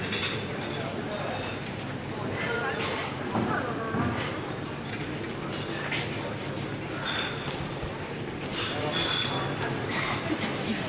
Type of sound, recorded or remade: recorded